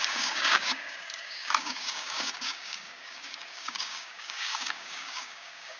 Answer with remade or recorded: remade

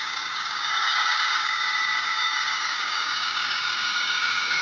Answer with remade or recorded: remade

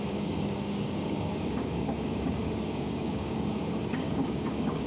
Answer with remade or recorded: remade